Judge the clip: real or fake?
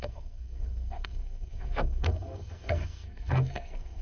fake